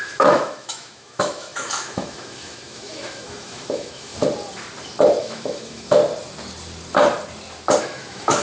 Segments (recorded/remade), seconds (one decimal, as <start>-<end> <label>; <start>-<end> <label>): 0.0-4.1 remade; 4.1-5.2 recorded; 5.2-6.0 remade; 6.0-7.8 recorded; 7.8-8.4 remade